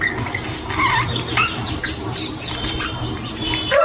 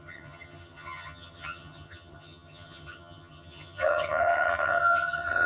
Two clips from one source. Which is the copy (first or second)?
second